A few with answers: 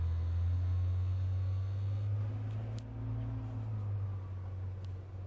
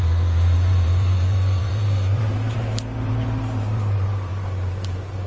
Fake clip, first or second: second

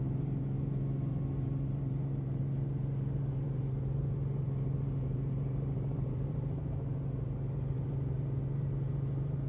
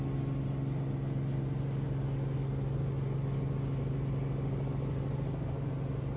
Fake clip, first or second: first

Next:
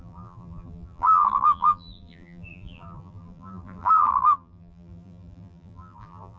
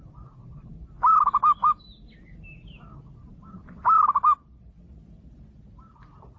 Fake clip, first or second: first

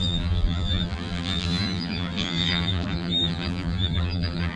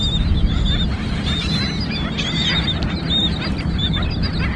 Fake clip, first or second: first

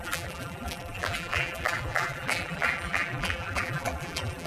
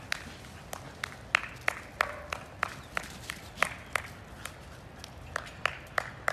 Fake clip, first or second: first